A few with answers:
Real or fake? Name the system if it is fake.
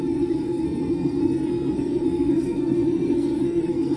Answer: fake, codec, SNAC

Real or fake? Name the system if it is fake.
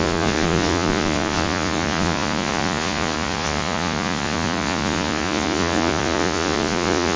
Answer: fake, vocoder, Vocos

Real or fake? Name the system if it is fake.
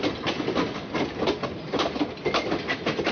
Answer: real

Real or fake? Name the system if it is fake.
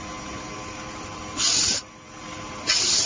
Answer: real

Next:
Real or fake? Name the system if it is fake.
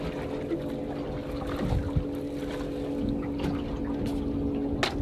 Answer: real